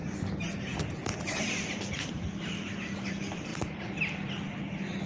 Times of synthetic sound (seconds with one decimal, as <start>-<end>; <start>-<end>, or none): none